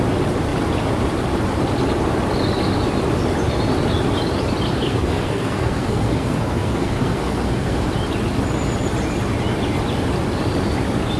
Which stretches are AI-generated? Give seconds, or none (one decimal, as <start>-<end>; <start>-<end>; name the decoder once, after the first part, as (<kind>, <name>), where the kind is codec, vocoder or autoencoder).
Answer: 4.7-7.9 (codec, SNAC)